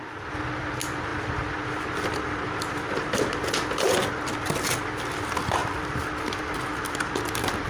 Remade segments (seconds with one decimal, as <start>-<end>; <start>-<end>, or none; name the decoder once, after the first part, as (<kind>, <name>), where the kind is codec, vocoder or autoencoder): 5.6-7.7 (vocoder, BigVGAN v2)